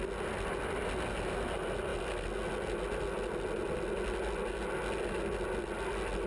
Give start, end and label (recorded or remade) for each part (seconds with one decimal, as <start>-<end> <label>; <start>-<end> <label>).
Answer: 0.0-6.3 recorded